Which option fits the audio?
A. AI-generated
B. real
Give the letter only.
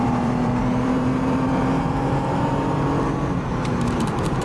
A